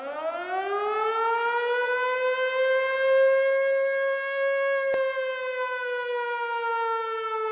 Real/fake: real